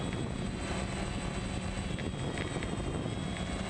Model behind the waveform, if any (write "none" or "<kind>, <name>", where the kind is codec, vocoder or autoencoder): none